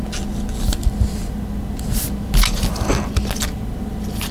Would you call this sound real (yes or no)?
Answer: yes